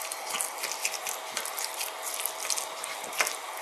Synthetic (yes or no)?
no